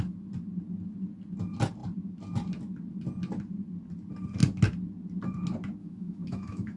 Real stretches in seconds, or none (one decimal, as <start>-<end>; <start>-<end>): 0.0-5.8